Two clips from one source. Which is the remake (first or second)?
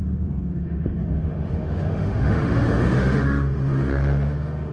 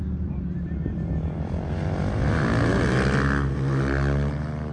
first